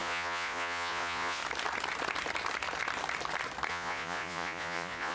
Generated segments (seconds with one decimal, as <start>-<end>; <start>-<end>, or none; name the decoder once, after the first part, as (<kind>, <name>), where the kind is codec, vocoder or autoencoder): 0.0-1.4 (vocoder, Vocos); 3.7-5.1